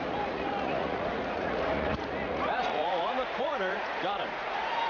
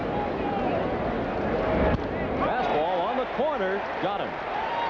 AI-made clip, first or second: first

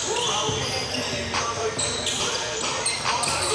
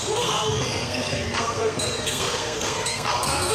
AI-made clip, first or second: second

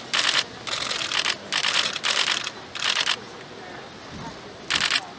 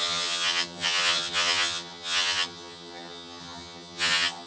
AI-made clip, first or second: second